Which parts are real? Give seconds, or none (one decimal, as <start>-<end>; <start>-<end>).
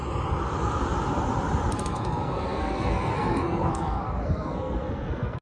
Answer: 0.0-1.7